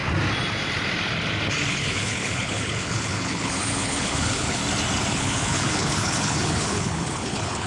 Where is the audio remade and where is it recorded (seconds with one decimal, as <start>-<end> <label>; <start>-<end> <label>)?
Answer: 0.0-1.7 recorded; 1.7-4.6 remade; 4.6-5.1 recorded; 5.1-7.7 remade